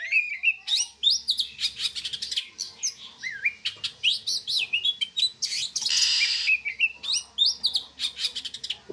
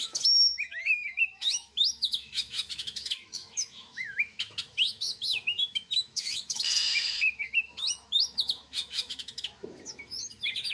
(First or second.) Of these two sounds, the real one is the first